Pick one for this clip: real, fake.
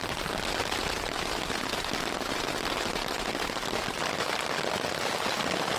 real